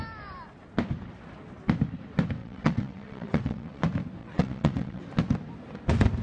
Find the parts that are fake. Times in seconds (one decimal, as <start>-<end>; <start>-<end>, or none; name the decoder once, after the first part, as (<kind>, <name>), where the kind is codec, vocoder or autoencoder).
2.4-3.8 (vocoder, WaveNeXt); 4.2-5.0